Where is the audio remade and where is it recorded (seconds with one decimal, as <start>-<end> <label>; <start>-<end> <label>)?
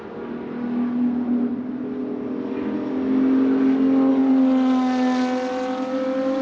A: 0.0-6.4 recorded